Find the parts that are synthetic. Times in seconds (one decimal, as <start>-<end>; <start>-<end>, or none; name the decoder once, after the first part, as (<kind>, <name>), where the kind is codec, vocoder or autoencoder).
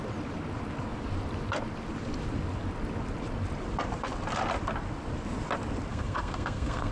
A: 5.9-6.9 (codec, SNAC)